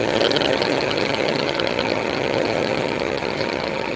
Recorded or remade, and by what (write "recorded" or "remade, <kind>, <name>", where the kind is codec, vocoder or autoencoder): remade, vocoder, HiFi-GAN